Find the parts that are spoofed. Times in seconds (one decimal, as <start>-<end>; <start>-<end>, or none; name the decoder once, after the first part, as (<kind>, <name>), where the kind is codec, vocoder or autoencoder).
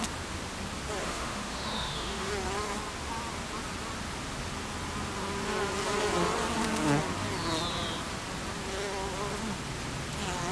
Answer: 1.0-2.3 (autoencoder, DAC-VAE)